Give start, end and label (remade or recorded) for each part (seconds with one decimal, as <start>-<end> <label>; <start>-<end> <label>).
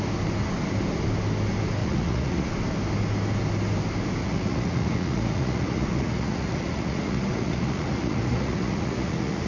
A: 0.0-1.8 recorded; 1.8-2.5 remade; 2.5-4.2 recorded; 4.2-9.5 remade